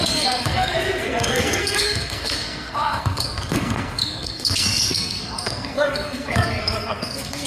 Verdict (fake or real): fake